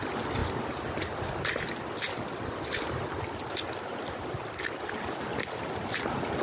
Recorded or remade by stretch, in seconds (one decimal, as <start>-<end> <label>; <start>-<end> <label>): 0.0-6.4 recorded